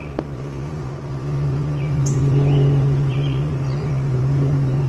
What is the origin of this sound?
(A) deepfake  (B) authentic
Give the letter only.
A